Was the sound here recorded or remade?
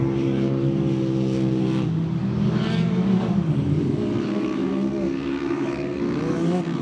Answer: remade